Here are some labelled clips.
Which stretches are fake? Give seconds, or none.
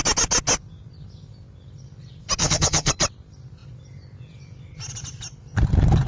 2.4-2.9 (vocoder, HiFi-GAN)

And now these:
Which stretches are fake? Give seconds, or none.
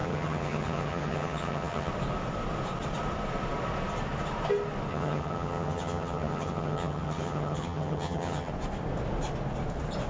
0.0-1.9 (vocoder, HiFi-GAN); 4.9-8.5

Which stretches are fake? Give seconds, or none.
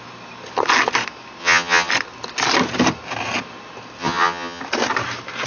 1.4-1.9 (vocoder, HiFi-GAN); 4.0-4.6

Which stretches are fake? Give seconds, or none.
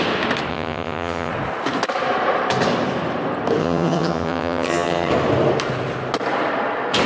0.5-1.3 (vocoder, HiFi-GAN); 3.6-5.1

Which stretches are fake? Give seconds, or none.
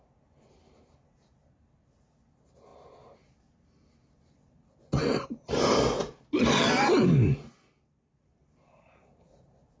none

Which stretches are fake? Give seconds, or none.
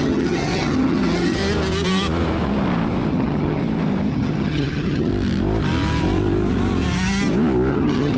0.0-1.4 (vocoder, HiFi-GAN); 3.1-3.6; 4.1-5.1; 7.7-8.2